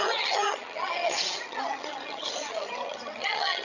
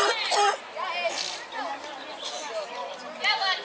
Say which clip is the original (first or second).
second